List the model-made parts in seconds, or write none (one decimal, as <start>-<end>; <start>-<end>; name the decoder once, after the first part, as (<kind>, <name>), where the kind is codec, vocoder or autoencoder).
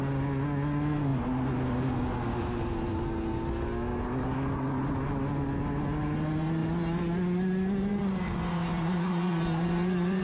8.7-10.2 (vocoder, BigVGAN v2)